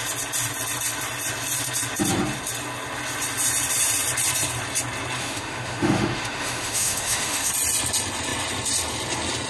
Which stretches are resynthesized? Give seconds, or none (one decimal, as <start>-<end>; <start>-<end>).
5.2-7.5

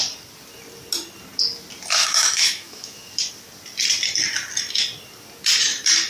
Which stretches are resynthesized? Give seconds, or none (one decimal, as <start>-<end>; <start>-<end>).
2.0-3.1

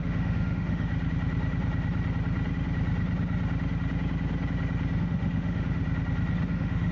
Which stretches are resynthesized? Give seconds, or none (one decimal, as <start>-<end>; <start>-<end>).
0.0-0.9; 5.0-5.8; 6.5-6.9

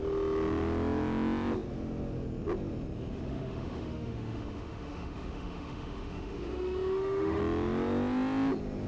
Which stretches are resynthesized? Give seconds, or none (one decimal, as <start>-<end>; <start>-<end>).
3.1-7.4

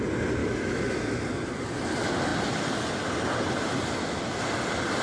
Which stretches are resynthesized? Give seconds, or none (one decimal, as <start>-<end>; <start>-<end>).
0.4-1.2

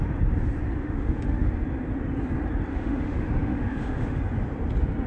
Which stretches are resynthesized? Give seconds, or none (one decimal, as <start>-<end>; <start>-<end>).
0.8-1.5; 2.7-4.2

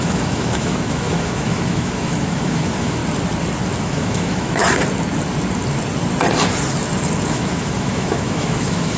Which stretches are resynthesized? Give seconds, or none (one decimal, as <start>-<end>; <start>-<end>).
0.0-3.0; 3.8-4.6; 7.3-9.0